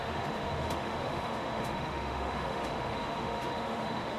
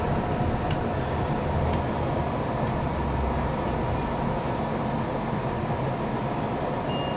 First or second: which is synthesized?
first